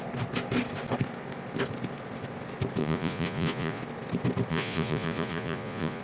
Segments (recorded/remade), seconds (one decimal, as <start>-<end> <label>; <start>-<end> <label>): 0.0-2.8 recorded; 2.8-3.8 remade; 3.8-4.5 recorded; 4.5-6.0 remade